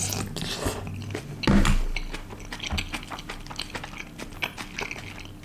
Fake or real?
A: real